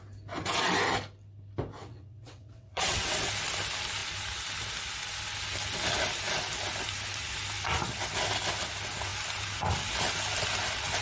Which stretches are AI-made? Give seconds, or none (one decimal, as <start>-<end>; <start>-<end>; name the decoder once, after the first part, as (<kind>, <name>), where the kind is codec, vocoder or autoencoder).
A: 1.8-3.3 (vocoder, WaveNeXt)

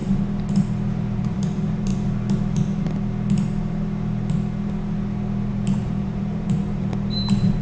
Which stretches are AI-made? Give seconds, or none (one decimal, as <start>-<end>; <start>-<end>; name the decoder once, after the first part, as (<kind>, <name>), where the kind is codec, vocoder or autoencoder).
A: 1.2-1.9 (vocoder, BigVGAN v2); 5.5-7.6

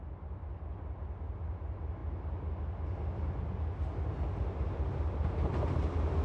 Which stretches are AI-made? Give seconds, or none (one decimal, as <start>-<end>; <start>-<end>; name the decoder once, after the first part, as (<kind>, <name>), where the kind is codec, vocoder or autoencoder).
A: none

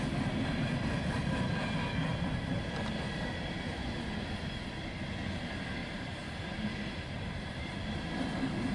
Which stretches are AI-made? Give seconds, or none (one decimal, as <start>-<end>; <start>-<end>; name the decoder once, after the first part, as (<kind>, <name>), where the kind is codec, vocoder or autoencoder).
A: 3.8-4.5 (vocoder, BigVGAN v2); 5.8-7.7

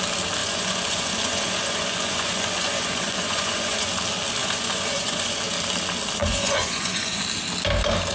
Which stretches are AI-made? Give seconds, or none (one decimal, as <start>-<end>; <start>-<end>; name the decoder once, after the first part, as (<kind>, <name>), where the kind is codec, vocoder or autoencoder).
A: 0.4-3.9 (vocoder, Vocos); 4.4-5.4; 6.2-7.2